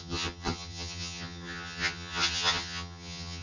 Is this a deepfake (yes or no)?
yes